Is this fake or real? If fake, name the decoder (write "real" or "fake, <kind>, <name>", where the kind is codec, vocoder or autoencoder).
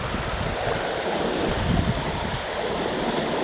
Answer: real